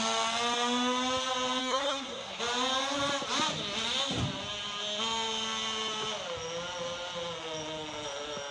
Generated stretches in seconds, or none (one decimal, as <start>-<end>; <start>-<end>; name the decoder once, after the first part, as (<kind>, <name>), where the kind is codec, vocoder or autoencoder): 1.6-2.4 (codec, SNAC)